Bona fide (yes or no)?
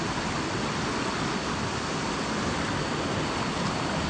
yes